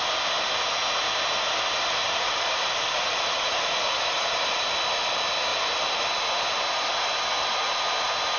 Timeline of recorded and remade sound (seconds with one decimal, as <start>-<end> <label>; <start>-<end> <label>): 0.0-2.0 recorded; 2.0-4.6 remade; 4.6-5.5 recorded; 5.5-6.1 remade; 6.1-8.4 recorded